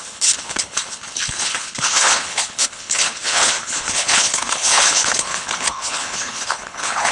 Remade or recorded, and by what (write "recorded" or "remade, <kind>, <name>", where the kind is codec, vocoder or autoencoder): remade, codec, HILCodec